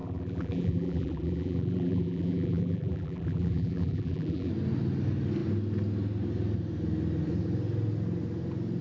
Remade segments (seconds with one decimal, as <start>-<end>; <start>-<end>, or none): 0.0-4.5

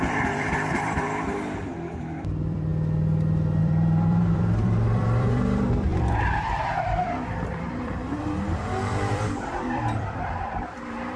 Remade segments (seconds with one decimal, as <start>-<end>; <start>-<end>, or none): 0.0-2.7; 3.6-11.2

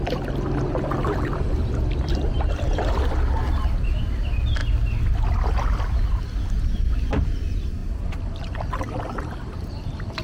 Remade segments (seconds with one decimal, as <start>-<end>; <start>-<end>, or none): 0.6-3.0